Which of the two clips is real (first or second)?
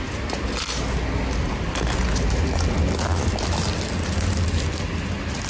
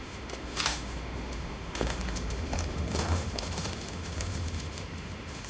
first